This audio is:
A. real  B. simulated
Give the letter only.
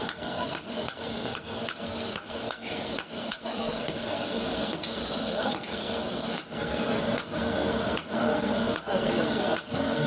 B